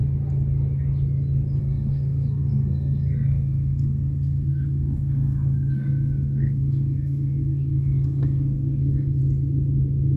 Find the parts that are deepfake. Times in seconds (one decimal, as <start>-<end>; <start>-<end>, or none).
1.6-9.2